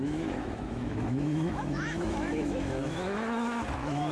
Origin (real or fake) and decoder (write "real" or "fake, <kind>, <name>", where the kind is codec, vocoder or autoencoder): fake, autoencoder, DAC-VAE